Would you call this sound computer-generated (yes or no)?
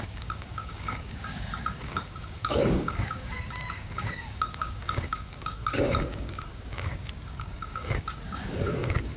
yes